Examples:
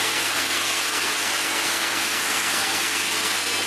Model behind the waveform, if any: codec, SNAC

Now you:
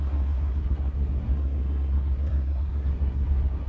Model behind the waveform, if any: codec, SNAC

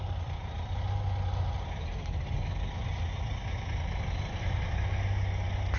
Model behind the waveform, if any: none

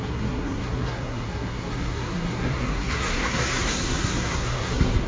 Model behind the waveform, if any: codec, SNAC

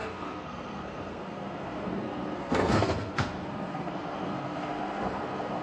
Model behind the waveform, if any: codec, SNAC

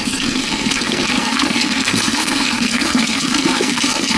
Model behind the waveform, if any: codec, SNAC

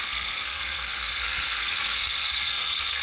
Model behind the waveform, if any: codec, SNAC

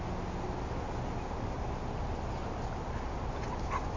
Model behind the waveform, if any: none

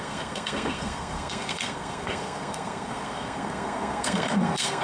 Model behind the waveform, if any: codec, SNAC